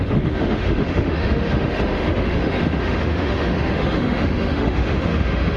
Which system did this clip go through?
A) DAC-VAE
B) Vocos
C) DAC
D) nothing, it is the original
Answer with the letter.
A